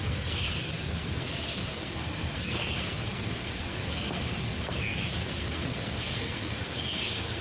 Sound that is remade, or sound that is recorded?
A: remade